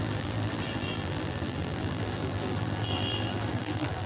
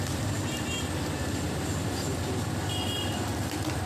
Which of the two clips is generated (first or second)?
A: first